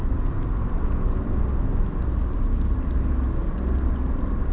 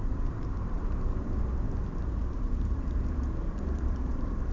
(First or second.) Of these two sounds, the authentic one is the first